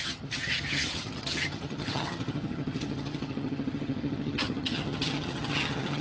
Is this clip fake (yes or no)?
yes